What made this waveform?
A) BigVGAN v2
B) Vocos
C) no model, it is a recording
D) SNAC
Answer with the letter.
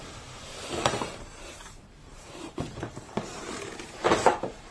A